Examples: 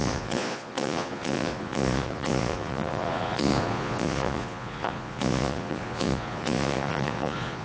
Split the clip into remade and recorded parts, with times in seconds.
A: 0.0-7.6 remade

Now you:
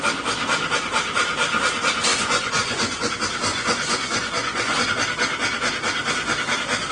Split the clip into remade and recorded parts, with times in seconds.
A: 0.0-2.1 recorded; 2.1-3.1 remade; 3.1-3.5 recorded; 3.5-4.9 remade; 4.9-6.9 recorded

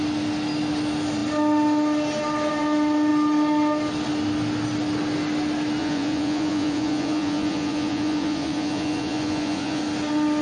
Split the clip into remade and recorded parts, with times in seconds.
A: 0.0-5.8 recorded; 5.8-9.8 remade; 9.8-10.4 recorded

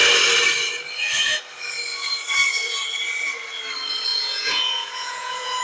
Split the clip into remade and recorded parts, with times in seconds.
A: 0.0-4.1 recorded; 4.1-5.6 remade

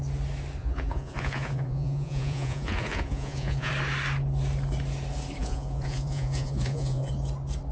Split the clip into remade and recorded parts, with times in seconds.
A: 0.0-0.6 recorded; 0.6-3.7 remade; 3.7-5.4 recorded; 5.4-7.1 remade; 7.1-7.7 recorded

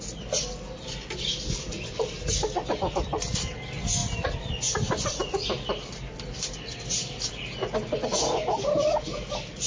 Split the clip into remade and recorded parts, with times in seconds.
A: 0.0-9.7 recorded

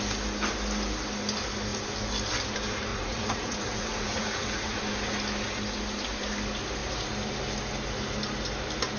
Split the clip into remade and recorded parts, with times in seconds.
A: 0.0-2.9 recorded; 2.9-4.8 remade; 4.8-9.0 recorded

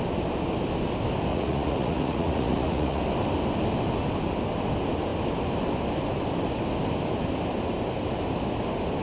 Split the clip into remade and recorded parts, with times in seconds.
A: 0.0-1.3 recorded; 1.3-3.0 remade; 3.0-9.0 recorded